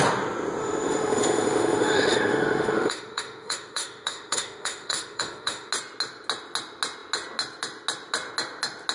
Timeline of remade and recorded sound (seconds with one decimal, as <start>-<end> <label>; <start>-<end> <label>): 0.0-0.6 recorded; 0.6-5.7 remade; 5.7-8.9 recorded